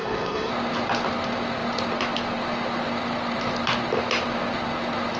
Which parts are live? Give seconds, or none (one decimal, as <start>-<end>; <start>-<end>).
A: 0.5-5.2